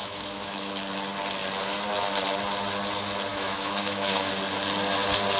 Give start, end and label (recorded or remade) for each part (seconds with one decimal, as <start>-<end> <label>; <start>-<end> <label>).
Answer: 0.0-0.7 remade; 0.7-3.3 recorded; 3.3-4.3 remade; 4.3-5.4 recorded